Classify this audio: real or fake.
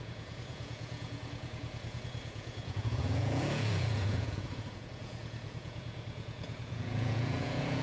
fake